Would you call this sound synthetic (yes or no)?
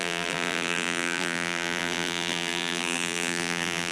yes